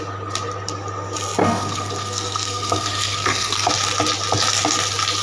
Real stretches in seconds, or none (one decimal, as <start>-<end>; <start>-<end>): 0.0-1.4; 3.7-5.2